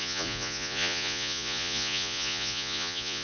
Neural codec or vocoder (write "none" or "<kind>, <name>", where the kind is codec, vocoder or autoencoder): vocoder, Vocos